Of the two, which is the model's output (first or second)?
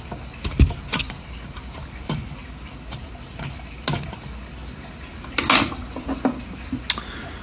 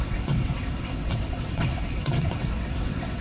second